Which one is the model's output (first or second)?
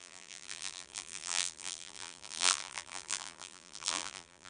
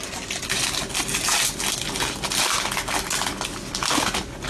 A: first